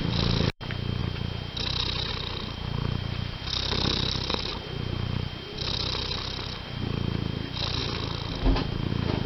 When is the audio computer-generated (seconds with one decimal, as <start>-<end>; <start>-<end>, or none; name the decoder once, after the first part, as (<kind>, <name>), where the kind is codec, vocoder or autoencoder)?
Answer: 0.0-1.0 (vocoder, BigVGAN v2); 2.1-7.8; 8.9-9.3